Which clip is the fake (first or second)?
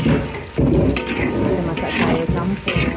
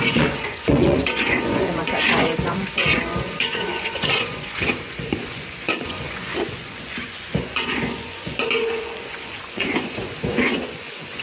second